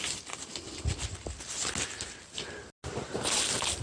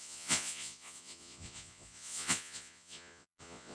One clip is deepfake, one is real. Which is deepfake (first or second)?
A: second